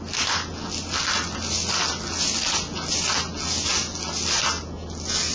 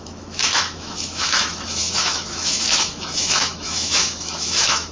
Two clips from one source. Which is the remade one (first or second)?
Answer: second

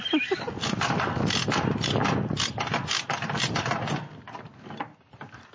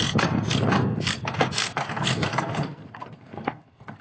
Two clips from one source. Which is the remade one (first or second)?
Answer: second